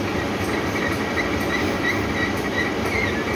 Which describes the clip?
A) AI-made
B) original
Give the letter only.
B